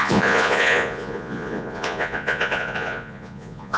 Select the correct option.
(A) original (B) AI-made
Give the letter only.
B